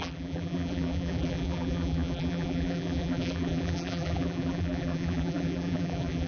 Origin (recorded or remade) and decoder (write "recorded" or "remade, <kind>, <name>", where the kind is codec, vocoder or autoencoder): remade, vocoder, BigVGAN v2